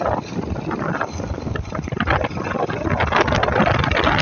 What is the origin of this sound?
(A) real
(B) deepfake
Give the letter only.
A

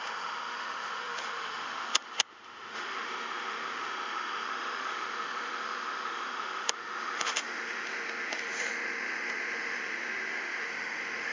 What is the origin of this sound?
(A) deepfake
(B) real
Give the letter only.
A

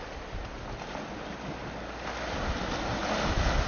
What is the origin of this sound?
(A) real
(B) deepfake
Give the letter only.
A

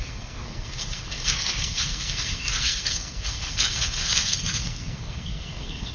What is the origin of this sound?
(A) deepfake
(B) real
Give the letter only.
A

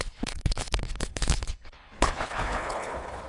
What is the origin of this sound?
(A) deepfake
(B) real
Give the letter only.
A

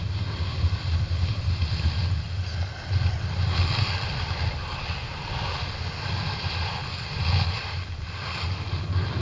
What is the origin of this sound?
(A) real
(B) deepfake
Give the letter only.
A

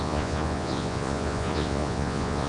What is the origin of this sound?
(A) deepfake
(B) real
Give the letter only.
A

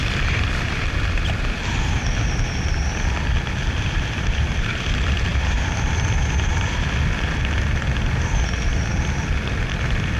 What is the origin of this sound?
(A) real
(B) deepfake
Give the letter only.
A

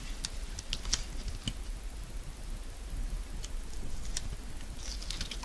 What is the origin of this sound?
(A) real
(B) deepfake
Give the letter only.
A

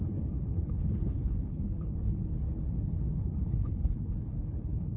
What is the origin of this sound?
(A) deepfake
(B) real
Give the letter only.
A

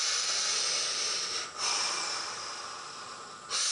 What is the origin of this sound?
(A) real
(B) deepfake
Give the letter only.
A